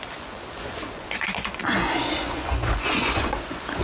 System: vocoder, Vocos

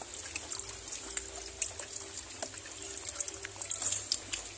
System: none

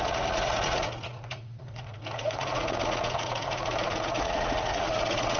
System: vocoder, Vocos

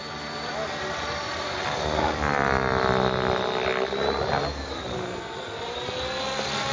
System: none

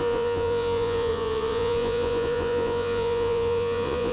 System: vocoder, Vocos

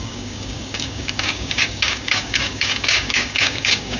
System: codec, DAC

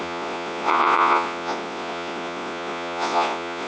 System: vocoder, Vocos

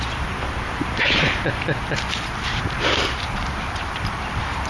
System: vocoder, BigVGAN v2